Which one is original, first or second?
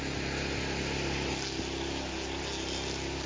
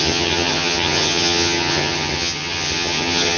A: first